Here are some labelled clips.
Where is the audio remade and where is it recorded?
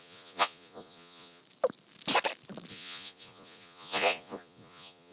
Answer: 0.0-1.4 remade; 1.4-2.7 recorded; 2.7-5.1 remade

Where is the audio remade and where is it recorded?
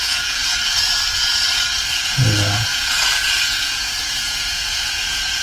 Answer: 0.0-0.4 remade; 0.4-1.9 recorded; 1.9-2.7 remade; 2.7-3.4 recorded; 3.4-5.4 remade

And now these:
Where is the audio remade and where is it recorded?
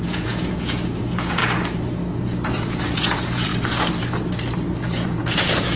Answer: 0.0-1.4 remade; 1.4-2.5 recorded; 2.5-3.5 remade; 3.5-4.8 recorded; 4.8-5.8 remade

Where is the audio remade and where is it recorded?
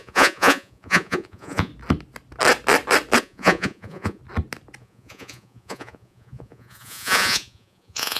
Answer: 0.0-1.7 remade; 1.7-3.2 recorded; 3.2-4.2 remade; 4.2-4.8 recorded; 4.8-8.2 remade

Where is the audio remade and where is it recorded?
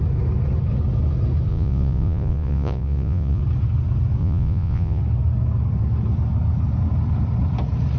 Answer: 0.0-1.5 recorded; 1.5-3.4 remade; 3.4-4.2 recorded; 4.2-5.0 remade; 5.0-8.0 recorded